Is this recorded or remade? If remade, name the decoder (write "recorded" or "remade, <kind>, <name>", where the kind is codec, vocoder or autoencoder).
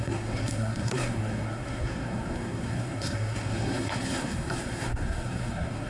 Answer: remade, codec, SNAC